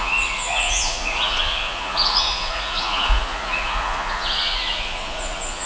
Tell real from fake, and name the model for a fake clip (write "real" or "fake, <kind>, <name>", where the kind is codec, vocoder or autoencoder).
fake, vocoder, Vocos